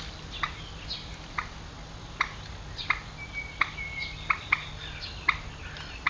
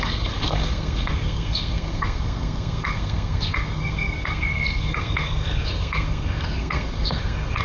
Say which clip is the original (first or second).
first